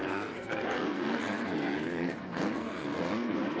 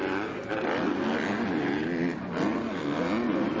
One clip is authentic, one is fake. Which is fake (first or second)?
first